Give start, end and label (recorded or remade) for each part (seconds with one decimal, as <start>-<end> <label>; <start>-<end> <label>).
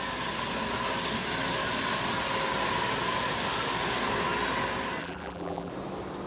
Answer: 0.0-5.0 recorded; 5.0-5.7 remade; 5.7-6.3 recorded